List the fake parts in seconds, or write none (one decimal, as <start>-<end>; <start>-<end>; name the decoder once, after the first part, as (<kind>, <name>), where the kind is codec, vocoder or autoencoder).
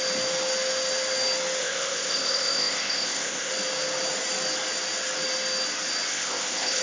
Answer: 1.6-3.5 (codec, ZipCodec); 6.1-6.8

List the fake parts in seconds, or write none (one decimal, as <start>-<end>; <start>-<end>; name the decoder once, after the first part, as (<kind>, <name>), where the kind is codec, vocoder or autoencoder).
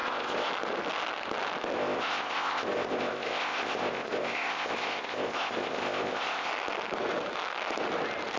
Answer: 0.0-0.5 (codec, ZipCodec); 1.7-6.5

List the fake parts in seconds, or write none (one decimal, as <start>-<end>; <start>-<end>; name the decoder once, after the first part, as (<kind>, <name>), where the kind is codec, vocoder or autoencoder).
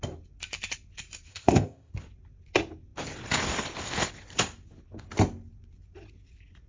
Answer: 1.3-1.9 (codec, ZipCodec)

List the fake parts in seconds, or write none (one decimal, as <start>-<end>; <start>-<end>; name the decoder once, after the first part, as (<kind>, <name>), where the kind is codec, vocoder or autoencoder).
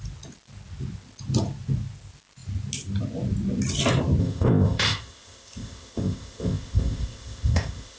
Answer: 4.2-8.0 (codec, ZipCodec)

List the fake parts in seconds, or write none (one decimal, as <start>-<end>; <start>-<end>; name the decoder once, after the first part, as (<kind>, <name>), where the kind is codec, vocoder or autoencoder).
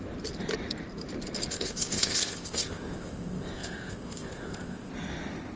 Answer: 1.5-4.9 (codec, ZipCodec)